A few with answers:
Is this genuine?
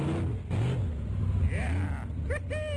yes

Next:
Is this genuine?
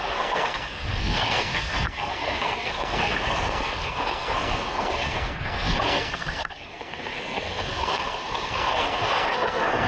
no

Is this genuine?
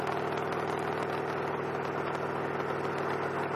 yes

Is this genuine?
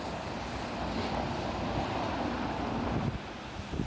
yes